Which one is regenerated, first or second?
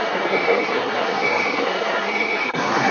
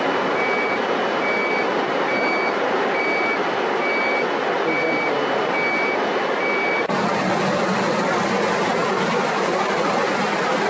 first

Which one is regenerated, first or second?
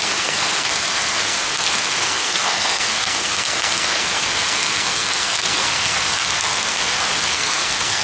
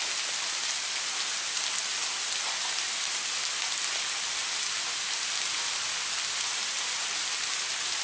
first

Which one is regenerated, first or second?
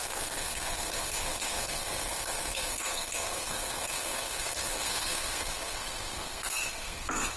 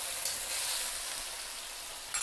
first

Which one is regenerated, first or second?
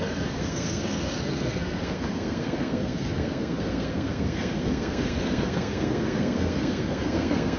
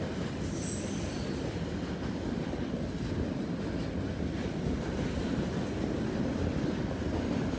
first